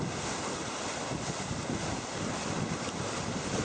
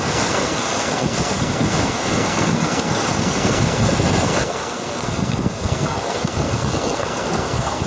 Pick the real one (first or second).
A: first